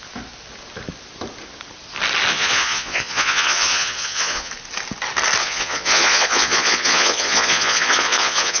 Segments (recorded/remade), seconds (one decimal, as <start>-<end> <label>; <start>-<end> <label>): 0.0-2.3 recorded; 2.3-4.5 remade; 4.5-5.4 recorded; 5.4-8.6 remade